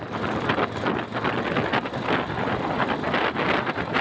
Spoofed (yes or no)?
no